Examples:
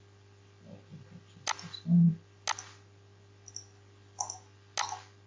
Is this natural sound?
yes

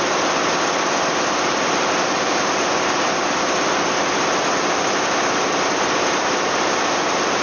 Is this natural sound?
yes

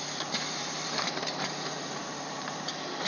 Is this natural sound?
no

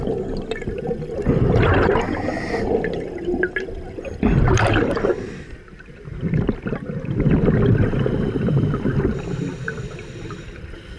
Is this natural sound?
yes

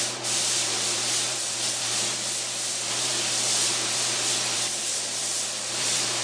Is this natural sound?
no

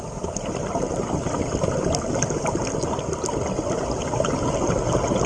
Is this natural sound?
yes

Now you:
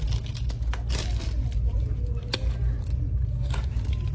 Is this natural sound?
yes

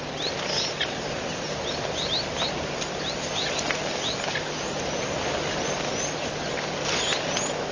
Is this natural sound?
yes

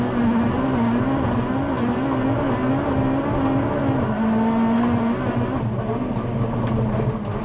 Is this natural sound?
yes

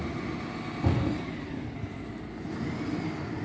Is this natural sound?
yes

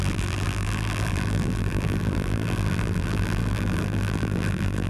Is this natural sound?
no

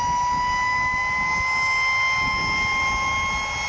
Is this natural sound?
yes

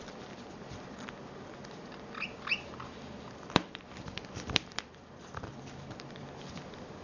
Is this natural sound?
no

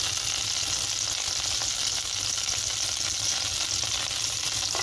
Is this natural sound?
yes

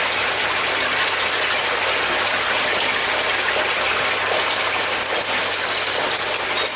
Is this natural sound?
yes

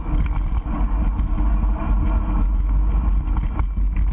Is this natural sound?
yes